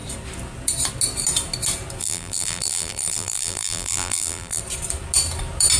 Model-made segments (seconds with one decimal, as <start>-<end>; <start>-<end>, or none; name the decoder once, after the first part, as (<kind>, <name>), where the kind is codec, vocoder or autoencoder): 2.0-4.6 (vocoder, BigVGAN v2)